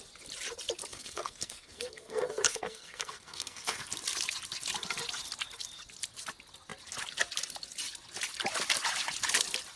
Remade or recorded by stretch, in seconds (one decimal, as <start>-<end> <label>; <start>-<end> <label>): 0.0-0.9 recorded; 0.9-3.9 remade; 3.9-9.8 recorded